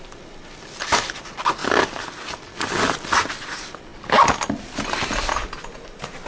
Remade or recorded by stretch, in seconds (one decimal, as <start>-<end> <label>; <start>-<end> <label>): 0.0-6.3 recorded